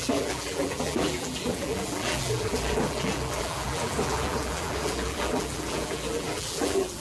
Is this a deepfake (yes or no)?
yes